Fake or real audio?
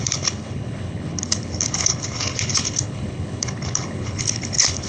fake